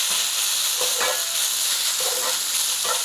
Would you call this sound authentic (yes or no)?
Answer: yes